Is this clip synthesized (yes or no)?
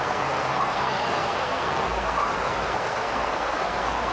yes